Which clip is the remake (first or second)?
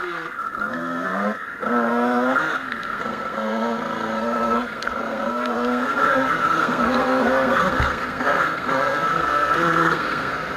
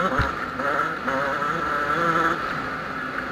first